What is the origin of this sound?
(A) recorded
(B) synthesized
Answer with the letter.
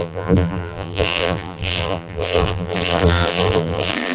B